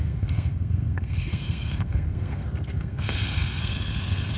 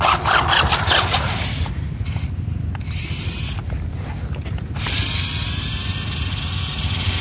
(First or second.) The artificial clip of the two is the first